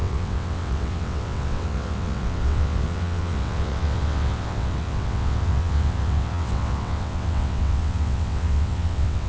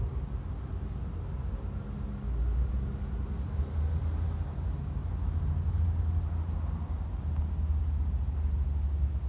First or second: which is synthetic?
first